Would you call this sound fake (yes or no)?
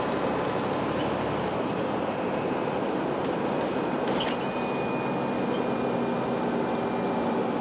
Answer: no